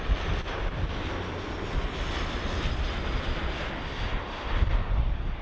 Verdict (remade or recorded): recorded